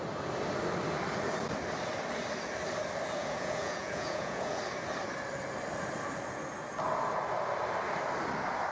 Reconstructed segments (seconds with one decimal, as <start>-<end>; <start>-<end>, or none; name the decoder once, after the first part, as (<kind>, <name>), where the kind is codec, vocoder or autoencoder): 3.2-4.6 (vocoder, Vocos)